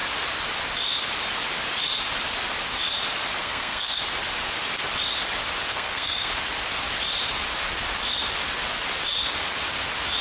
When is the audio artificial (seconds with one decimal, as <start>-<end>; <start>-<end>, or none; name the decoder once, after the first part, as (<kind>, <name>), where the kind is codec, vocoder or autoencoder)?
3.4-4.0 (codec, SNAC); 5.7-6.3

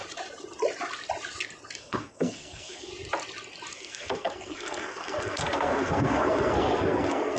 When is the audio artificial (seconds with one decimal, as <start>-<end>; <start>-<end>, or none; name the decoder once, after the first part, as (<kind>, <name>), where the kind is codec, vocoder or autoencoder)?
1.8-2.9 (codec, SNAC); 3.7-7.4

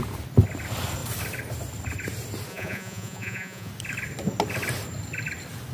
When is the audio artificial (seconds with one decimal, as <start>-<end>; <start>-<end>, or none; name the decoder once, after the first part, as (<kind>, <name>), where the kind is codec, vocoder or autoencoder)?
2.5-3.7 (vocoder, Vocos)

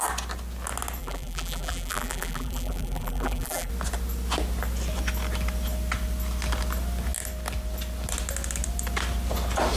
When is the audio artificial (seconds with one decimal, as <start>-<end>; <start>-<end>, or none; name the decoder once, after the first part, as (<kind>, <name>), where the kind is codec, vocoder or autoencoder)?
1.0-3.7 (vocoder, BigVGAN v2)

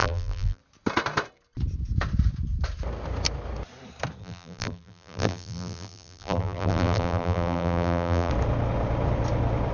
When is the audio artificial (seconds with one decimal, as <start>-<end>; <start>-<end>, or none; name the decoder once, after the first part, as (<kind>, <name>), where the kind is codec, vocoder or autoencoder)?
0.0-0.6 (vocoder, BigVGAN v2); 4.2-8.3